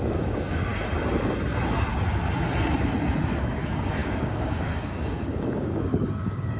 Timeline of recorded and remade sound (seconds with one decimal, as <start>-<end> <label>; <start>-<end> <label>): 0.0-0.7 remade; 0.7-3.4 recorded; 3.4-6.6 remade

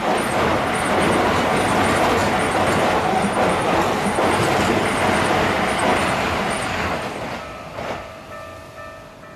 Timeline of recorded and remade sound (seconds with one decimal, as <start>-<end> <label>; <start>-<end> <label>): 0.0-9.4 recorded